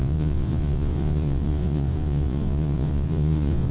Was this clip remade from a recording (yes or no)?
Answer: yes